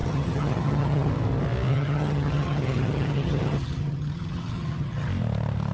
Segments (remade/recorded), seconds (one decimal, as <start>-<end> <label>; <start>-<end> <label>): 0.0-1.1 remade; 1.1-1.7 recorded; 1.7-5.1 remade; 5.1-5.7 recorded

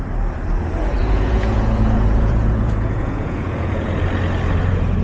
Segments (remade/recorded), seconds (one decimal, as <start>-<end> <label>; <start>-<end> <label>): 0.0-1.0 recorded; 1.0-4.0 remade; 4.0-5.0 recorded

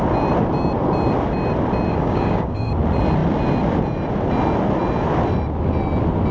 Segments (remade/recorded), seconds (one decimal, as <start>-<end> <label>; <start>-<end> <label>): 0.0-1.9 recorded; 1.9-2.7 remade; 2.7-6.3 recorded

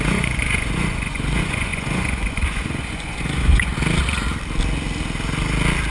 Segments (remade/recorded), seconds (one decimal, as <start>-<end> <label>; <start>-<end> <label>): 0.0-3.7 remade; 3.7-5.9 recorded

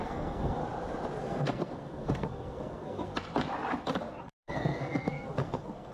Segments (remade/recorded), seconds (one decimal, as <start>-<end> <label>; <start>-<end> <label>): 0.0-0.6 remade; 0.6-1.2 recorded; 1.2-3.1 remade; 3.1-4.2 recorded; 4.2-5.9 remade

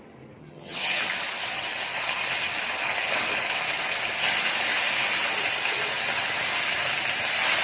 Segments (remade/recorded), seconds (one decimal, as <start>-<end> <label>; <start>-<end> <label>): 0.0-0.4 recorded; 0.4-1.0 remade; 1.0-7.6 recorded

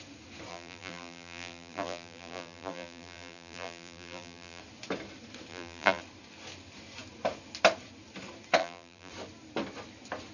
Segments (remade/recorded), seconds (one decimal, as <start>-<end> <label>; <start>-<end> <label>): 0.0-0.5 recorded; 0.5-4.6 remade; 4.6-5.5 recorded; 5.5-6.0 remade; 6.0-8.6 recorded; 8.6-9.1 remade; 9.1-10.3 recorded